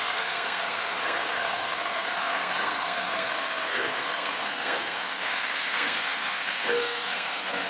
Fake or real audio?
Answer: fake